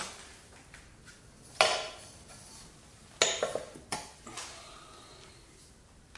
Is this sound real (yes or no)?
yes